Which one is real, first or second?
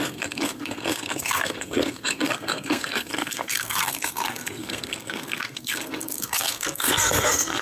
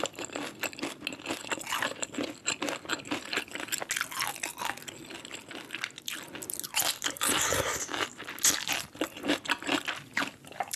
second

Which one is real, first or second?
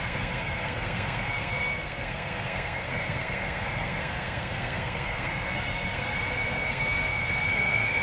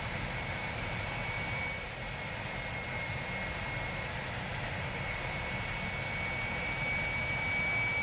second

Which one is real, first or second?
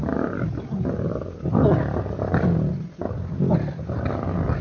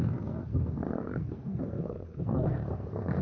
first